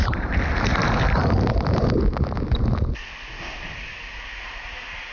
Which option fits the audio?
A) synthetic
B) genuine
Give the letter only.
B